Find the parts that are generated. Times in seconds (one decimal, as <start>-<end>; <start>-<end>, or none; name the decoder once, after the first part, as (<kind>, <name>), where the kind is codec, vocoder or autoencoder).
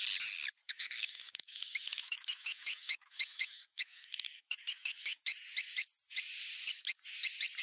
0.6-5.2 (autoencoder, DAC-VAE)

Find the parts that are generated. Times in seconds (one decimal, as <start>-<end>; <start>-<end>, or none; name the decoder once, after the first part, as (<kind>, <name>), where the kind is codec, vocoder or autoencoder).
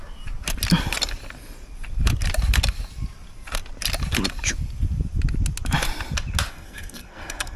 6.5-7.6 (codec, SNAC)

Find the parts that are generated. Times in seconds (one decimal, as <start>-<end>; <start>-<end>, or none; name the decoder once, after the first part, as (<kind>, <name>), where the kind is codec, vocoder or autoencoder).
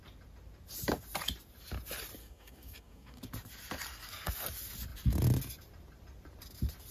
2.2-3.2 (codec, DAC)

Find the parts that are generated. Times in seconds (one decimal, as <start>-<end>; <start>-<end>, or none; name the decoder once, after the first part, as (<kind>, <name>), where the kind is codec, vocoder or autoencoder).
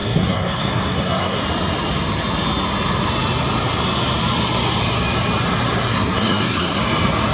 0.0-1.4 (codec, SNAC); 5.9-6.8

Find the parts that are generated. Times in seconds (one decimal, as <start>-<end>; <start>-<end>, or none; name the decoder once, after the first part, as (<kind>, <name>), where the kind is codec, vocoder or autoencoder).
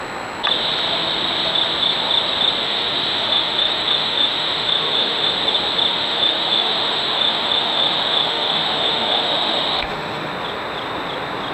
2.6-5.3 (autoencoder, DAC-VAE); 5.9-10.3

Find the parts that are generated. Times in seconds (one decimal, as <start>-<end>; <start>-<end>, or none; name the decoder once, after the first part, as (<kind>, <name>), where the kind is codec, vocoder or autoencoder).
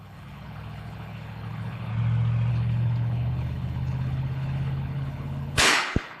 0.0-1.9 (codec, HILCodec); 2.5-6.2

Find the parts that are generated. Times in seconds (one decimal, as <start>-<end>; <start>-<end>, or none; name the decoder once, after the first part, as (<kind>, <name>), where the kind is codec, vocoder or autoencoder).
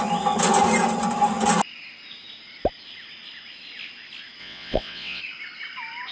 4.4-5.2 (vocoder, WaveNeXt)